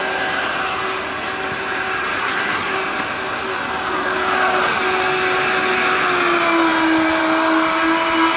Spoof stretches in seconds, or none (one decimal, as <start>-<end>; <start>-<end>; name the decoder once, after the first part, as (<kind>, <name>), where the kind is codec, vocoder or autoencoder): 2.2-2.7 (codec, SNAC)